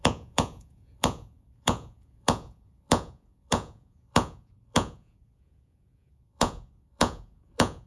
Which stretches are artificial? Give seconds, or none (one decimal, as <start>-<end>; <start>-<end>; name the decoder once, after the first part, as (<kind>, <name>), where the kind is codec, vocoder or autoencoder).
0.0-7.9 (vocoder, Vocos)